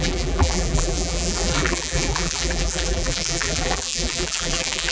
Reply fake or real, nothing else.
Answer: fake